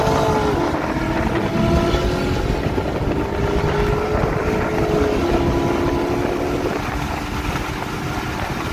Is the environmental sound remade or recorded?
recorded